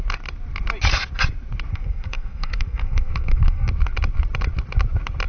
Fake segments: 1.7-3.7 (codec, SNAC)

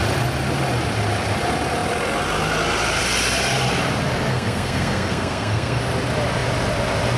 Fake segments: 4.3-5.8 (codec, SNAC)

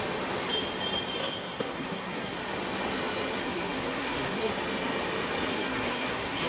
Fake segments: 1.2-2.4 (codec, SNAC); 3.4-4.5; 5.5-6.5

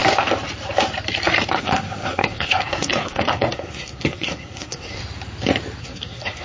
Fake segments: 1.6-5.0 (codec, SNAC); 5.8-6.4

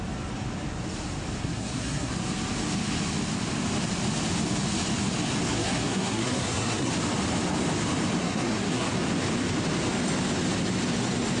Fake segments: 1.4-2.1 (codec, SNAC); 5.5-6.9; 8.2-8.9

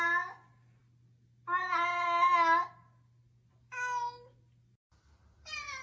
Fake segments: none